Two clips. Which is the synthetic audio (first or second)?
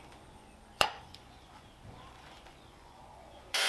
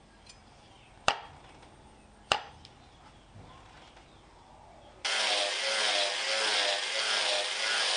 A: first